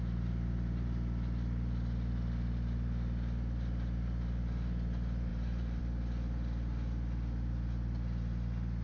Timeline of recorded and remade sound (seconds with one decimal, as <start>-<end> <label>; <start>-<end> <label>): 0.0-5.3 recorded; 5.3-5.8 remade; 5.8-8.8 recorded